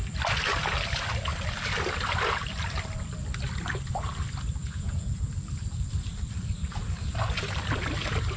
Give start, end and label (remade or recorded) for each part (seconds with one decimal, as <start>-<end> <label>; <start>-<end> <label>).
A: 0.0-4.6 recorded; 4.6-5.3 remade; 5.3-8.4 recorded